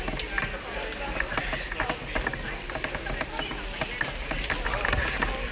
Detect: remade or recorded recorded